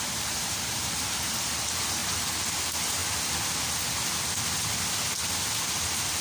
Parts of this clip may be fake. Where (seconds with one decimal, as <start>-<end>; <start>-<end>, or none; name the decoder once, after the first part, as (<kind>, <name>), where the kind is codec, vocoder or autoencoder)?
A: 0.0-2.0 (vocoder, BigVGAN v2); 2.6-3.0; 5.4-6.2